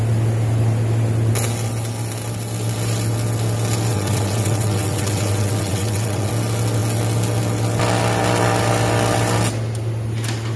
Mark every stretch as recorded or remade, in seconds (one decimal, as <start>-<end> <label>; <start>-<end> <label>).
0.0-3.9 recorded; 3.9-6.3 remade; 6.3-10.6 recorded